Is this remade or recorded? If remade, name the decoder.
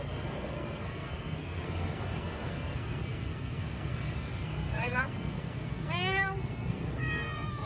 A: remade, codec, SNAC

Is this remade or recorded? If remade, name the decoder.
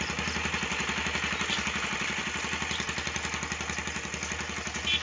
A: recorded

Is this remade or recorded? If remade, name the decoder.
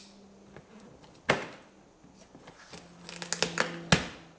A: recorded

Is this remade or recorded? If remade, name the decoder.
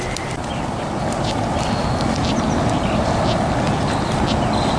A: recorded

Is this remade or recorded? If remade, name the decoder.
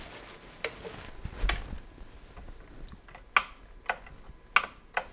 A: recorded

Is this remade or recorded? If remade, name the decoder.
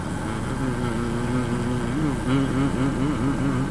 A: recorded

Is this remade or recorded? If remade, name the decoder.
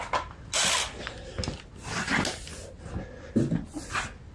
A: recorded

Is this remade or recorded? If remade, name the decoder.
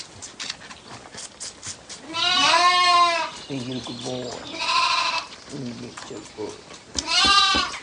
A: recorded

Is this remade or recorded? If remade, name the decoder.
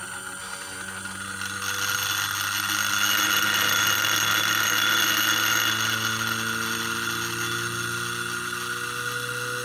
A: recorded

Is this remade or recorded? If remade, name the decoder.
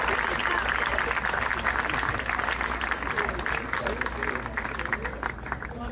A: recorded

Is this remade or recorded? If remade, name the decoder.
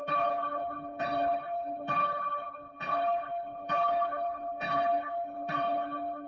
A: remade, codec, HILCodec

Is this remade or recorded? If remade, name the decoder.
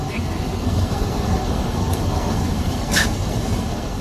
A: remade, codec, SNAC